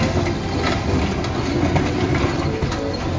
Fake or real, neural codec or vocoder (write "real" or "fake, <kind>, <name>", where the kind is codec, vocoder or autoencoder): real